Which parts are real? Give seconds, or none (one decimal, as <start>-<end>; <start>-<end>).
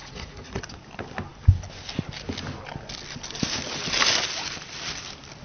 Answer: 0.6-5.4